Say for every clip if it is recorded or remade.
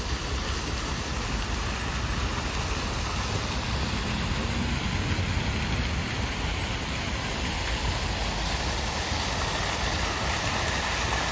recorded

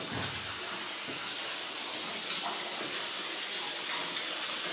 recorded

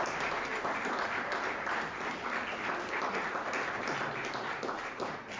recorded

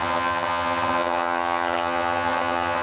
remade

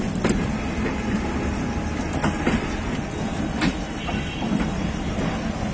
recorded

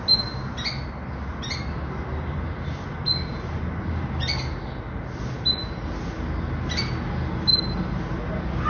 recorded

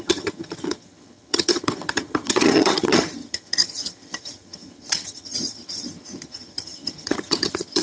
remade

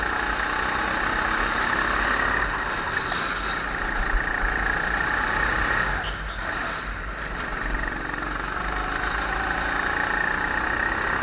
recorded